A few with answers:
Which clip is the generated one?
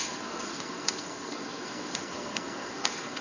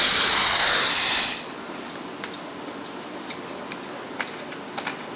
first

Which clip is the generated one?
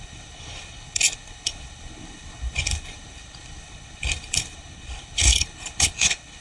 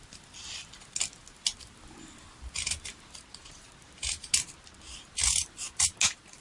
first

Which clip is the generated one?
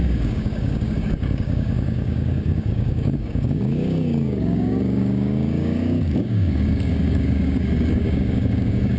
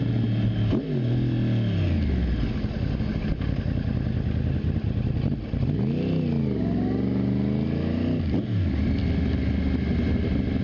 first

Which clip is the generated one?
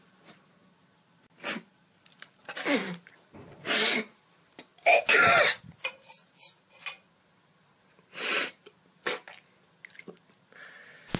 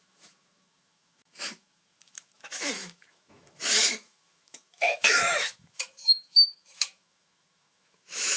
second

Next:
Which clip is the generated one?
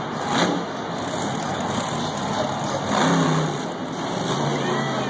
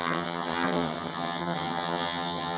second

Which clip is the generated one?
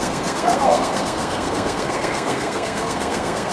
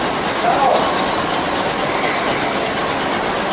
first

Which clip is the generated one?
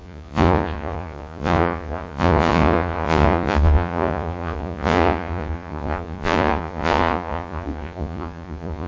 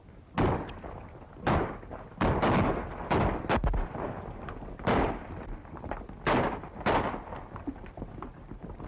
first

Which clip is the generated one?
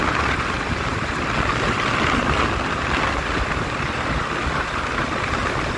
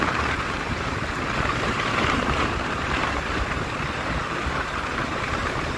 second